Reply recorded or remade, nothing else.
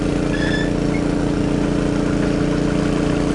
recorded